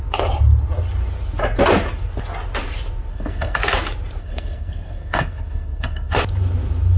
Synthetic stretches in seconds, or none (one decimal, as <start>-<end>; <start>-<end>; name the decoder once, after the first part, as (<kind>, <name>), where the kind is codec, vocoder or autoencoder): 3.1-3.6 (codec, SNAC); 4.2-6.1